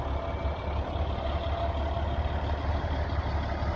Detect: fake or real real